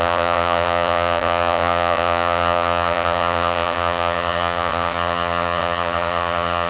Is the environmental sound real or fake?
fake